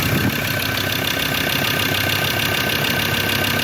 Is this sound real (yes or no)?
yes